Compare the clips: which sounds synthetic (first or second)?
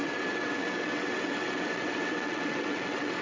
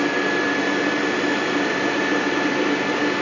first